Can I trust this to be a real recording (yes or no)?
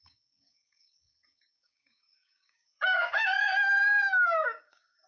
no